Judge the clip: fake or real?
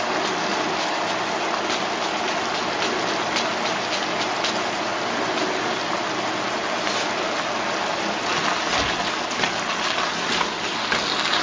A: real